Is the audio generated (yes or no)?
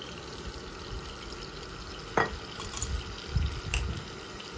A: no